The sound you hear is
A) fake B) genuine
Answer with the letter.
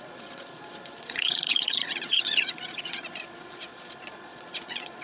A